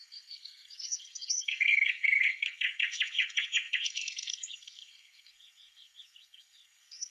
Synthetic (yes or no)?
yes